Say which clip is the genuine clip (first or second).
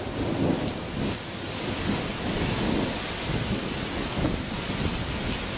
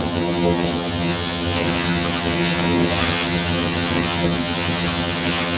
first